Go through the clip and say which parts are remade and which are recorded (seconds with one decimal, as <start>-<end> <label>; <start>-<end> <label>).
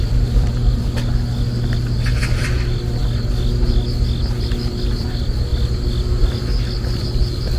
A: 0.0-0.6 remade; 0.6-2.2 recorded; 2.2-3.0 remade; 3.0-5.0 recorded; 5.0-5.5 remade; 5.5-7.0 recorded; 7.0-7.6 remade